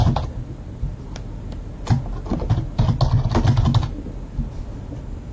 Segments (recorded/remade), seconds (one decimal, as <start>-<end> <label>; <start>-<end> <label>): 0.0-5.3 recorded